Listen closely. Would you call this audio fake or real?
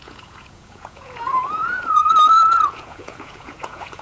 fake